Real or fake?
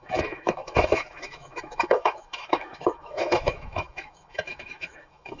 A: fake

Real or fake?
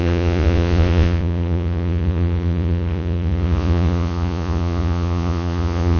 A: fake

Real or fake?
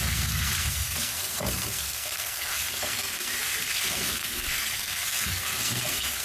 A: fake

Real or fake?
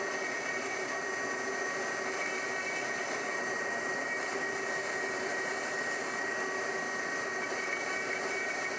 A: real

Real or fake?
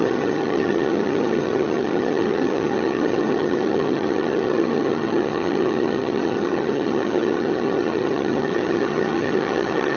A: fake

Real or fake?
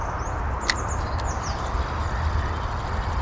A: real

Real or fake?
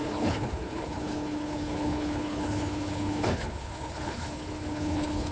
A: fake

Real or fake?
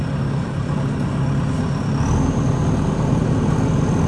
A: real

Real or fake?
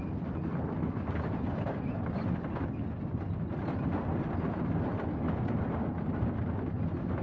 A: real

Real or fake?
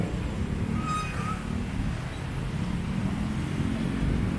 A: real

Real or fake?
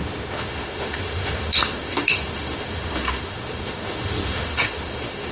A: fake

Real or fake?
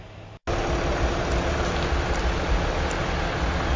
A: real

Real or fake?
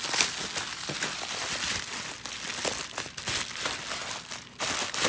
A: real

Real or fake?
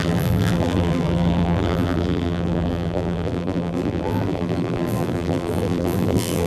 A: fake